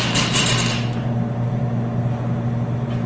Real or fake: real